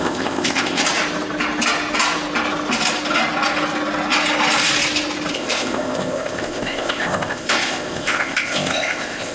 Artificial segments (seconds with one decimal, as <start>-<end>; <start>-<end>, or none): 0.0-0.8; 5.3-9.3